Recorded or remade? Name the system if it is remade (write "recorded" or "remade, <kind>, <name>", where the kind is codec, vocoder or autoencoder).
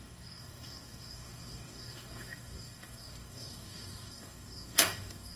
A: remade, codec, DAC